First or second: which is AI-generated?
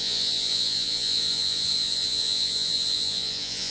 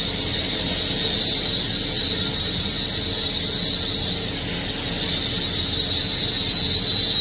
first